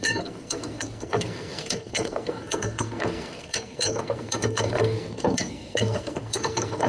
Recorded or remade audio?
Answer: remade